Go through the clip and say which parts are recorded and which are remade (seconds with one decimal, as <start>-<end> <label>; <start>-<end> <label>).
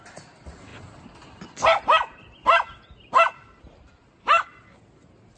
0.0-5.4 recorded